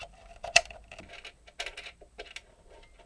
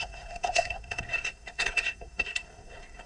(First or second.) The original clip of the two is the first